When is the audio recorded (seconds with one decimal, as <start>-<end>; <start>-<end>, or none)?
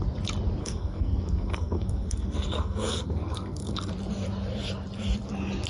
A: 0.0-0.6; 3.9-5.7